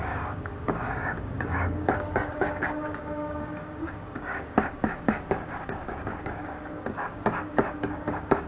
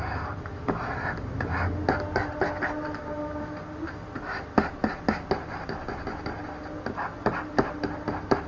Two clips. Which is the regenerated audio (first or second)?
first